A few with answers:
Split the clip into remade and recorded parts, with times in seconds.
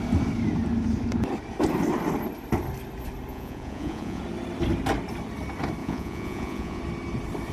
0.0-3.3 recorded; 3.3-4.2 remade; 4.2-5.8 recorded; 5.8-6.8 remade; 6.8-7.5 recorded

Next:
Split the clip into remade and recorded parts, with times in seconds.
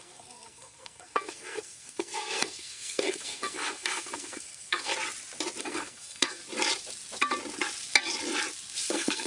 0.0-4.9 remade; 4.9-5.6 recorded; 5.6-6.4 remade; 6.4-8.9 recorded; 8.9-9.3 remade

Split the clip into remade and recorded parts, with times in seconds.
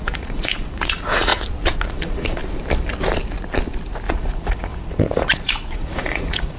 0.0-1.3 remade; 1.3-1.9 recorded; 1.9-2.4 remade; 2.4-4.1 recorded; 4.1-6.6 remade